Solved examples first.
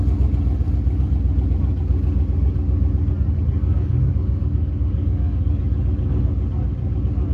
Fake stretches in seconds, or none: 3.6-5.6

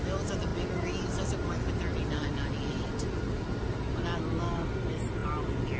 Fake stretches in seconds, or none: none

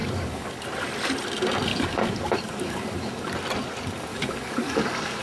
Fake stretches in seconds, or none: 0.0-0.6; 1.7-3.3; 4.1-5.2

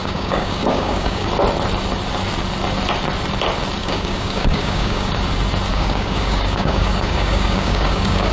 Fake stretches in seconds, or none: 0.0-1.3; 3.8-5.1; 5.7-8.3